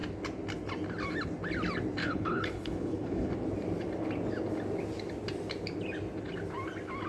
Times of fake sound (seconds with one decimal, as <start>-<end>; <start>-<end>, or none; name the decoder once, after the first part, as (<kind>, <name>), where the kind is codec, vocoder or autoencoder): 2.0-3.3 (codec, HILCodec)